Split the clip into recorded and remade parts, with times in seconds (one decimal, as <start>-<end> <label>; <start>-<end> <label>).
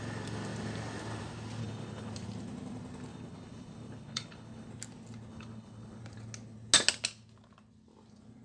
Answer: 0.0-1.6 recorded; 1.6-2.1 remade; 2.1-3.1 recorded; 3.1-4.7 remade; 4.7-5.3 recorded; 5.3-6.0 remade; 6.0-8.4 recorded